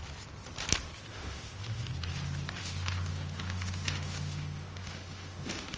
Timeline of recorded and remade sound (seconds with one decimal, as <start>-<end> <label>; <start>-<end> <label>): 0.0-1.1 recorded; 1.1-1.8 remade; 1.8-2.6 recorded; 2.6-5.8 remade